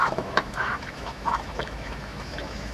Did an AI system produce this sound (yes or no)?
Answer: yes